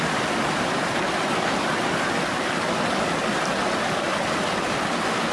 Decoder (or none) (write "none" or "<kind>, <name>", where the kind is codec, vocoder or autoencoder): none